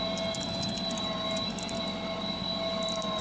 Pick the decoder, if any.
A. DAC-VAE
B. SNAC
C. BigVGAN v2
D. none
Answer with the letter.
D